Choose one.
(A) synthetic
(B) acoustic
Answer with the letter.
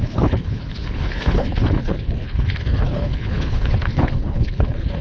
A